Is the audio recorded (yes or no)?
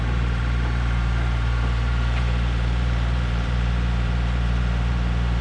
no